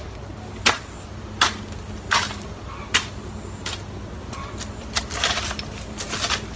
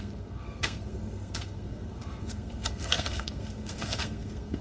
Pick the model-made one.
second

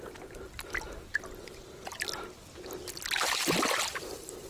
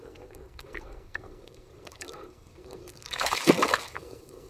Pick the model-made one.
second